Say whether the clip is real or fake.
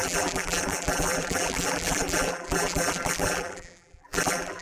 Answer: fake